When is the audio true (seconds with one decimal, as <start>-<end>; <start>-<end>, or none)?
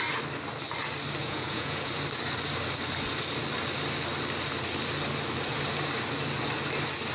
0.0-1.2; 1.9-7.1